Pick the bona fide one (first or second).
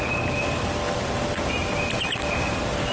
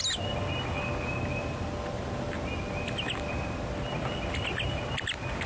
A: second